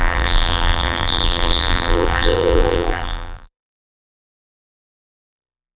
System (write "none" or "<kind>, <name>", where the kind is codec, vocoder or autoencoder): vocoder, BigVGAN v2